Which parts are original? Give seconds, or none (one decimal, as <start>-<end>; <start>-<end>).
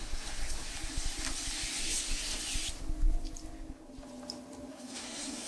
0.7-1.8; 2.4-4.7